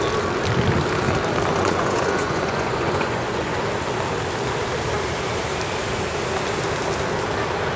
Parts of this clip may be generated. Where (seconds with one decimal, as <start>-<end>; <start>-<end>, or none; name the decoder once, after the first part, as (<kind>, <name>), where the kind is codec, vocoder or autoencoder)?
1.5-3.6 (vocoder, Vocos)